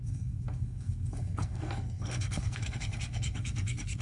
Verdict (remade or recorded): remade